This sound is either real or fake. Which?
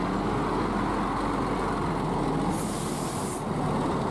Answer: real